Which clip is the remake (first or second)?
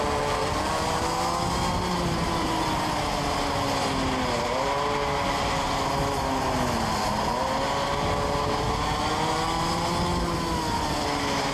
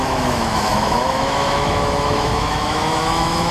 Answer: second